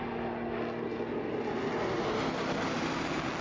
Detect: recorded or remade recorded